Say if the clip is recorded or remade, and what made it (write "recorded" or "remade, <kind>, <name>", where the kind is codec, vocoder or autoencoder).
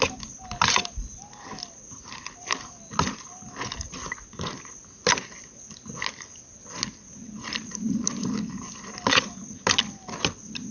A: recorded